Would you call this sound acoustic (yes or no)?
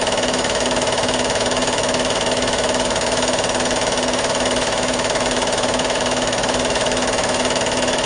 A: no